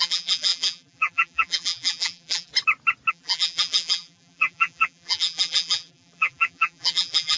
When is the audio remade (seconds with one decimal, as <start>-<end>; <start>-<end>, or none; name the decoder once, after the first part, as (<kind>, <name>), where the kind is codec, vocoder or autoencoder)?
0.0-2.5 (vocoder, BigVGAN v2); 3.1-7.4

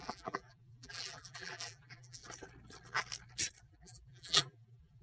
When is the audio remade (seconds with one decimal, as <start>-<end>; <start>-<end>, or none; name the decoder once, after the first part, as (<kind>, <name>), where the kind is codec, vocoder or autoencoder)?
0.0-2.2 (vocoder, BigVGAN v2); 3.7-5.0

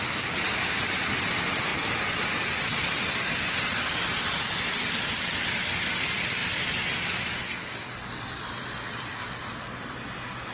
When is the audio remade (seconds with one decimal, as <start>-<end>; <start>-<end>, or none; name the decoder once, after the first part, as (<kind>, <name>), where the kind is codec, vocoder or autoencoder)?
0.0-1.7 (vocoder, BigVGAN v2); 4.4-6.4; 7.0-10.5

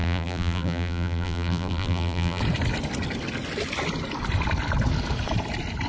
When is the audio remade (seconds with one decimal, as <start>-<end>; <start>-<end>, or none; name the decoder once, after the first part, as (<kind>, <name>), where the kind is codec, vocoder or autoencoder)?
0.0-2.4 (vocoder, BigVGAN v2)